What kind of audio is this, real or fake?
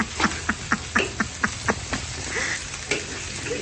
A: real